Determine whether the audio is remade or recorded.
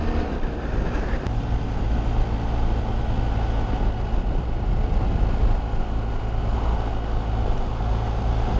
recorded